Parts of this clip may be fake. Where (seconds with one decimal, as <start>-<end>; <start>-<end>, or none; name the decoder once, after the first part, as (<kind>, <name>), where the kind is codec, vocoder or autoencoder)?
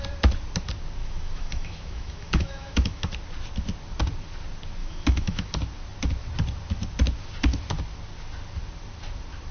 1.0-3.1 (autoencoder, DAC-VAE); 4.8-5.5